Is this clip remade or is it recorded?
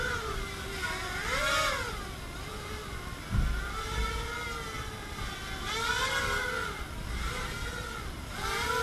recorded